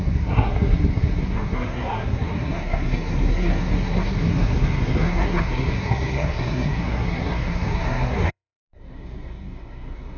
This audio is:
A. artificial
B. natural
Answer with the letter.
A